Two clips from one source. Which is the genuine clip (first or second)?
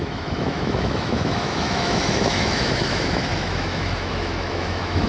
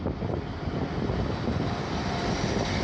second